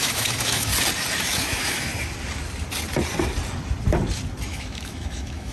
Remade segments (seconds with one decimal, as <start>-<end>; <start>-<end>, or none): 0.0-0.7; 1.4-1.9; 4.5-5.5